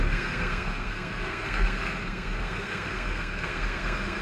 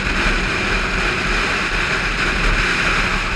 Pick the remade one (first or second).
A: first